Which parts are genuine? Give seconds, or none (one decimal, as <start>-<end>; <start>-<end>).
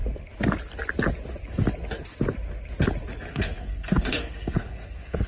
0.0-3.3